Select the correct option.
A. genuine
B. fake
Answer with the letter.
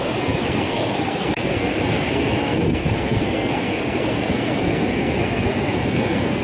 B